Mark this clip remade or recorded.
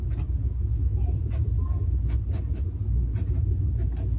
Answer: recorded